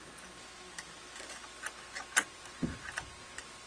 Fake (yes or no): no